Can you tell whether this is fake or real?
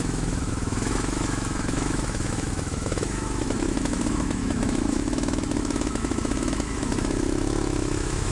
fake